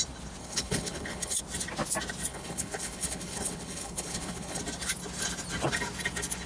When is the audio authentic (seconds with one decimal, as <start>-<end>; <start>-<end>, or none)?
0.0-0.4; 1.4-2.3; 4.6-6.5